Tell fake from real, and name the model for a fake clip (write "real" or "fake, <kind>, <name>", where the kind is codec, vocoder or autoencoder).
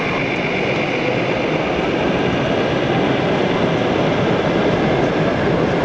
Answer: real